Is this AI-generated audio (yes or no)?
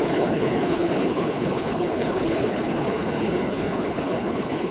yes